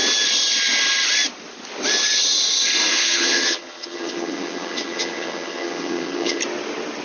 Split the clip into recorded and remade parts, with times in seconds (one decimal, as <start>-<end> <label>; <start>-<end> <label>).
0.0-2.9 recorded; 2.9-6.4 remade; 6.4-7.0 recorded